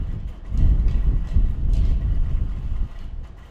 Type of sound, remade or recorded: recorded